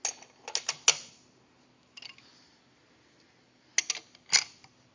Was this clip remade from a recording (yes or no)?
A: no